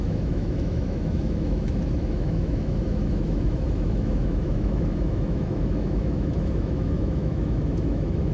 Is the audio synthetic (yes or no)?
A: yes